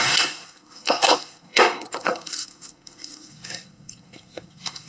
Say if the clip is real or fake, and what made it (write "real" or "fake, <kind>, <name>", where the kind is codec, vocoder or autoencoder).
fake, codec, SNAC